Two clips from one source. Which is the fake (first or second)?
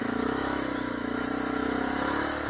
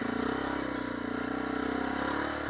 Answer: first